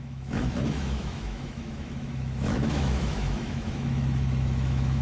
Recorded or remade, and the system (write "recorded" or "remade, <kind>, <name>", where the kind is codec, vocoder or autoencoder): remade, autoencoder, DAC-VAE